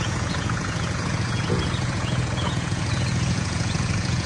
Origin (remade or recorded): remade